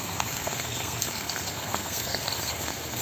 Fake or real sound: fake